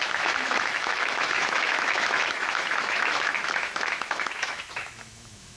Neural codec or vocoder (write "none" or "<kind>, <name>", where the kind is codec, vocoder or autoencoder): autoencoder, DAC-VAE